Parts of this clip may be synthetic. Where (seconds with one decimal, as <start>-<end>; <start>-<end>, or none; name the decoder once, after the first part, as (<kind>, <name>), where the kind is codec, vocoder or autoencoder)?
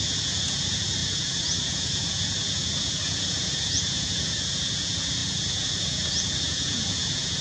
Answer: 0.0-7.4 (vocoder, Vocos)